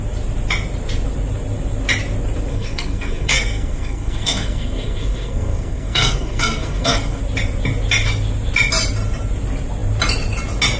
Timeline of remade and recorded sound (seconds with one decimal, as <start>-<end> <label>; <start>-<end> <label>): 0.0-2.5 recorded; 2.5-7.2 remade; 7.2-10.8 recorded